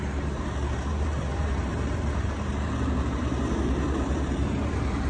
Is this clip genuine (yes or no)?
no